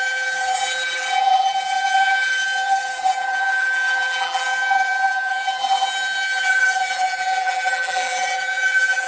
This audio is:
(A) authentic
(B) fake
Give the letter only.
B